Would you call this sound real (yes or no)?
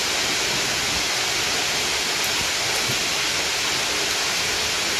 yes